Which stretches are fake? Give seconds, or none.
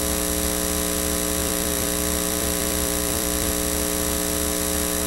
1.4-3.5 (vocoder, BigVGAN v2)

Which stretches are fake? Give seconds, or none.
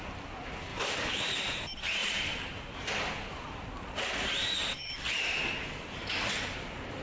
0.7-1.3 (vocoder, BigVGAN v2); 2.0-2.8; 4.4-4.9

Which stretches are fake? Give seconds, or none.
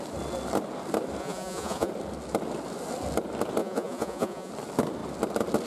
1.2-1.9 (vocoder, Vocos); 3.6-4.5